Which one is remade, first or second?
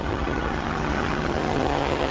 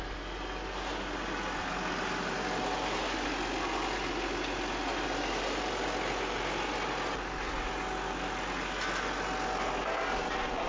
first